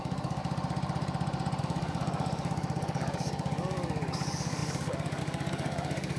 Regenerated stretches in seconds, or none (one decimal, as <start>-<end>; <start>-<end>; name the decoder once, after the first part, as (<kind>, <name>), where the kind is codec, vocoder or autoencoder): 0.0-0.4 (codec, DAC); 1.6-6.2